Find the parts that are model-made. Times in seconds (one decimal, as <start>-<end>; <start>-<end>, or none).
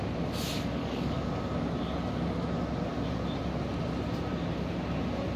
0.8-1.3